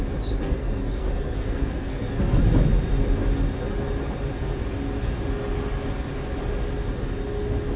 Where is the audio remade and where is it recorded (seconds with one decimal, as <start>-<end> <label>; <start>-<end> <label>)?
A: 0.0-0.4 recorded; 0.4-2.4 remade; 2.4-7.8 recorded